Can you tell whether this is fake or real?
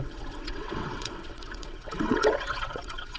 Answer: fake